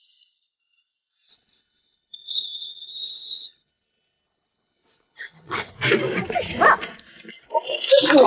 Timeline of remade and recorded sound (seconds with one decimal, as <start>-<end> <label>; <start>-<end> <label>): 0.0-1.3 recorded; 1.3-5.7 remade; 5.7-8.3 recorded